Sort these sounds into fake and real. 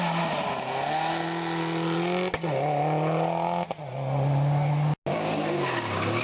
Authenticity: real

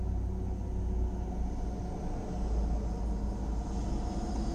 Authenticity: real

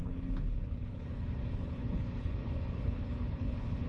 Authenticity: fake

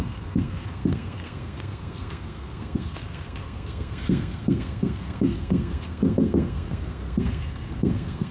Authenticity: fake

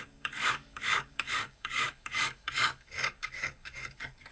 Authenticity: fake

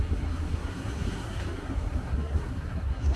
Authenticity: fake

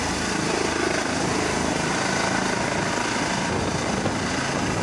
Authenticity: real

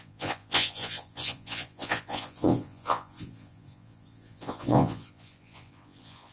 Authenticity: fake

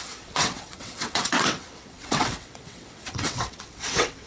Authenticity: fake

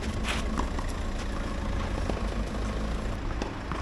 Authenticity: real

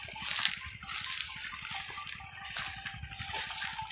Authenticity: real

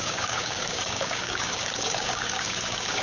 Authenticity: fake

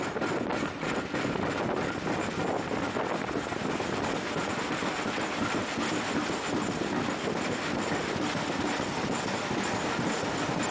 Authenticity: real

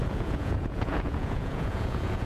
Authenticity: fake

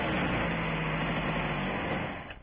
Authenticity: real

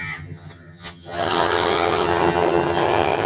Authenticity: fake